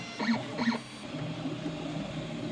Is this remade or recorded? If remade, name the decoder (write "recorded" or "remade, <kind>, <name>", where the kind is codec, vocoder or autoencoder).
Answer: recorded